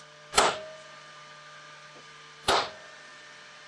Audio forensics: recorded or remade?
remade